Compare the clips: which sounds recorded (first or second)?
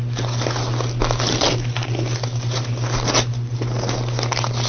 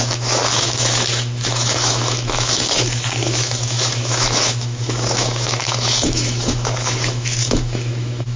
first